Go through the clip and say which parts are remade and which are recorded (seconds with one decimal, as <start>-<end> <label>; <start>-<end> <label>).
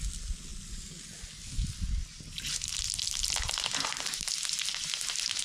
0.0-5.4 recorded